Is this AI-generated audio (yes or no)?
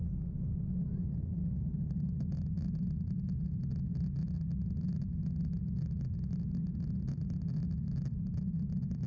no